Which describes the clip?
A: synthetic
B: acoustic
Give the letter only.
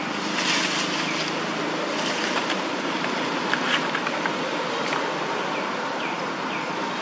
B